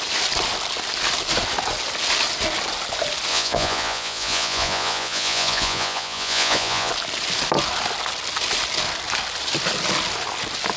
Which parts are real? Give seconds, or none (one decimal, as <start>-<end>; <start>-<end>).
0.0-3.3; 6.9-10.8